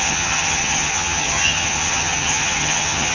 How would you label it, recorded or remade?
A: remade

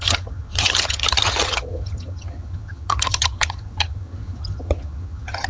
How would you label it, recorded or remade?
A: remade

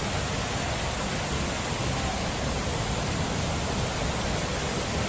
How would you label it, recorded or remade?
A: recorded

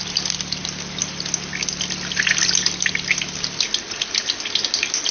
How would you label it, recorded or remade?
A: recorded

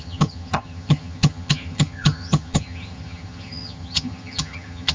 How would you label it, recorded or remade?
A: remade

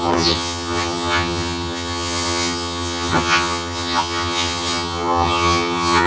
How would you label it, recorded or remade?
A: remade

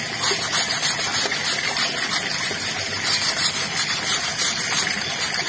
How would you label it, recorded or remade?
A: recorded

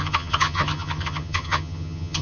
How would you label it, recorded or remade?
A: remade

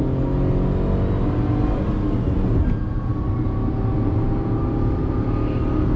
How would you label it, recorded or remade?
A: recorded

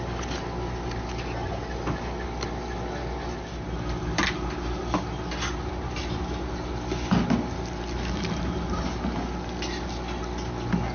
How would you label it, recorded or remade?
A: recorded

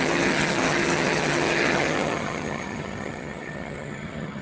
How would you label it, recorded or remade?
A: remade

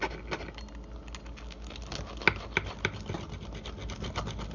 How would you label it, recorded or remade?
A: recorded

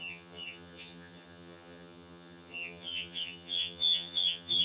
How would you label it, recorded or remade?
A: remade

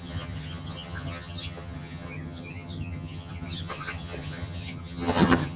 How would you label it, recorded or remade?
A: remade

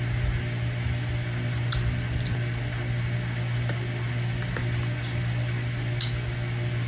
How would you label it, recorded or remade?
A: recorded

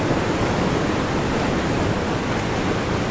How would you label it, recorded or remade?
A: recorded